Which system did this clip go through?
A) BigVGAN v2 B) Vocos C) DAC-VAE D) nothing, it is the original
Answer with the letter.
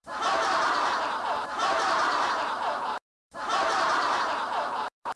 A